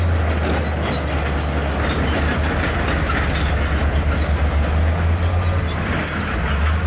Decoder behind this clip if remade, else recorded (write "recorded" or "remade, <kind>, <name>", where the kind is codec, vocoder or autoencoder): recorded